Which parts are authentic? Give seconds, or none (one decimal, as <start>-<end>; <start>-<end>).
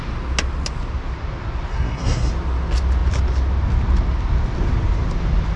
0.0-1.7; 2.3-5.6